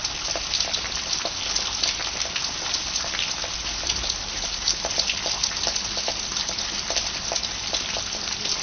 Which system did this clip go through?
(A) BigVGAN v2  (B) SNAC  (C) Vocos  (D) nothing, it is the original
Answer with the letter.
D